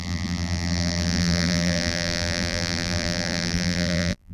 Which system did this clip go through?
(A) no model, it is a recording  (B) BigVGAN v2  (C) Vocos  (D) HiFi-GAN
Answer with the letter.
B